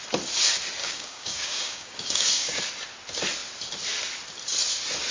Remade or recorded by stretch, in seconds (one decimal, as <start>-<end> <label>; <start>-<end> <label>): 0.0-0.8 recorded; 0.8-2.6 remade; 2.6-5.1 recorded